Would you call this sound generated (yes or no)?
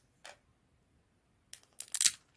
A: no